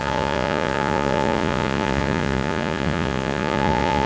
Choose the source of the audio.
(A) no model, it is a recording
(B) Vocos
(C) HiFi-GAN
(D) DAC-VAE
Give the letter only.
B